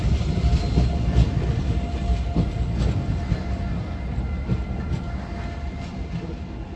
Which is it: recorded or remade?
recorded